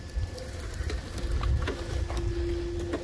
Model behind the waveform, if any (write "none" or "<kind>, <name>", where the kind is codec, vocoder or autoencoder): none